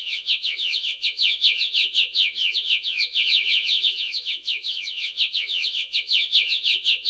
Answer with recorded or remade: remade